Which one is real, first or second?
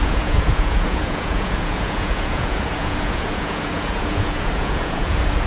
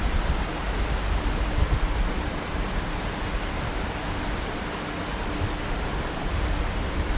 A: second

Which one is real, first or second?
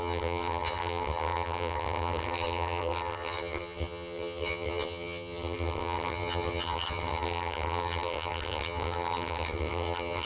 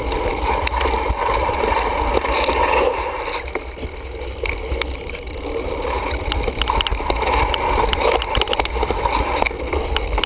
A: second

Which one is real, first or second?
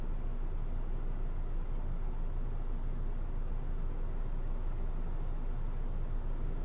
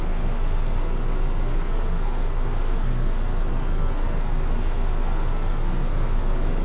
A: first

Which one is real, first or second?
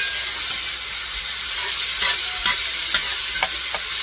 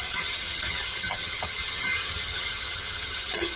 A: first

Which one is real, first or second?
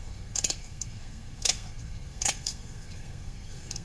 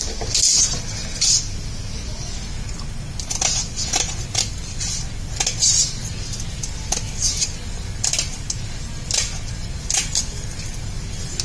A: second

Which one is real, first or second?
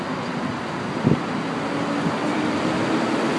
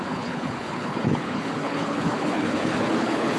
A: first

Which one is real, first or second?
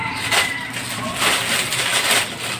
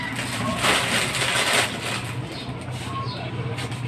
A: second